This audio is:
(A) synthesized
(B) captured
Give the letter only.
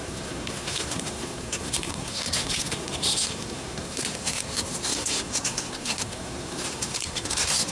A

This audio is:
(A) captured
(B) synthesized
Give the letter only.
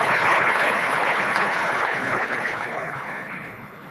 B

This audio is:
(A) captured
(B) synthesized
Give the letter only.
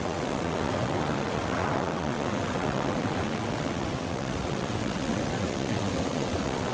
B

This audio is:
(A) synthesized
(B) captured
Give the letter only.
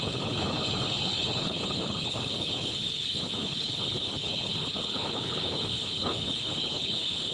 A